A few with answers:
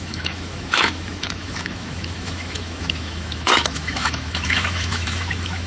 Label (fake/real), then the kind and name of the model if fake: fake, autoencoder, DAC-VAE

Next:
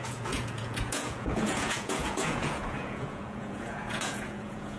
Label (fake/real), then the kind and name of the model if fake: fake, vocoder, Vocos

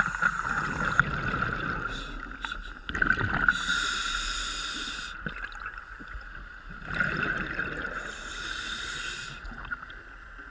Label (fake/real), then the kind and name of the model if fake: real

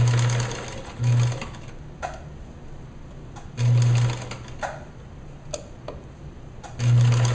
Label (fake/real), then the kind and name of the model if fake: real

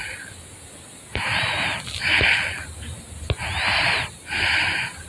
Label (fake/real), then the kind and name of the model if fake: real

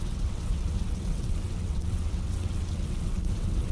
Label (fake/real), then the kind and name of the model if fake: fake, vocoder, WaveNeXt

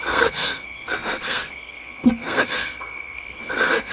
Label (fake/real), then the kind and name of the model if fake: fake, codec, SNAC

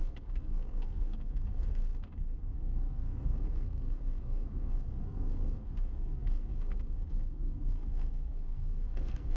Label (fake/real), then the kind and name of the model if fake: fake, codec, SNAC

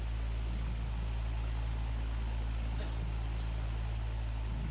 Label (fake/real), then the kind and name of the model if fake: real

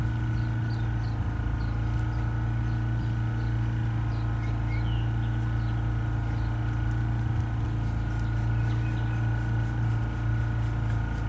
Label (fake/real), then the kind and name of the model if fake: real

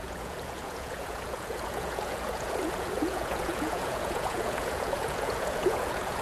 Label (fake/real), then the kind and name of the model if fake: fake, vocoder, Vocos